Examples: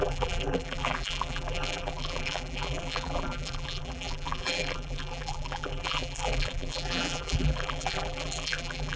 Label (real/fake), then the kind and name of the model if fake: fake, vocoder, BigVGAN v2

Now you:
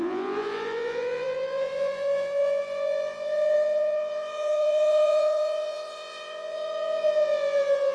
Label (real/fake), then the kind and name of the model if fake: fake, vocoder, Vocos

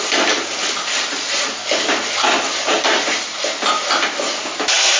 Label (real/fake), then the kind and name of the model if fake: real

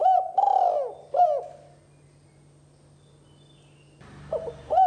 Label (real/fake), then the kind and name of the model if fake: real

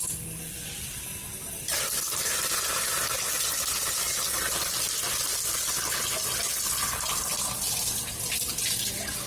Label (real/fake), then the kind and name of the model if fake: real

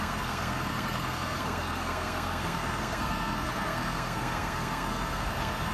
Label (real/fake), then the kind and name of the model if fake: fake, codec, SNAC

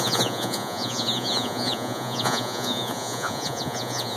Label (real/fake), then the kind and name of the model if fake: fake, vocoder, Vocos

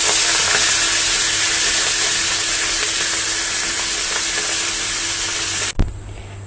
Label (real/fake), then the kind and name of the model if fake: real